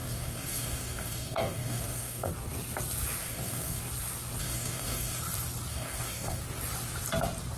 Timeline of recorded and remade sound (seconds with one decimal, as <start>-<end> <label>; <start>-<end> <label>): 0.0-2.3 remade; 2.3-3.2 recorded; 3.2-3.8 remade; 3.8-4.4 recorded; 4.4-5.2 remade; 5.2-5.7 recorded; 5.7-6.4 remade; 6.4-7.6 recorded